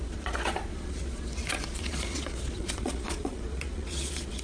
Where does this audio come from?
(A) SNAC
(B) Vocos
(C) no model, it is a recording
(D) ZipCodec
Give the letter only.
B